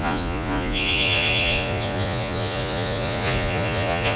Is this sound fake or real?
fake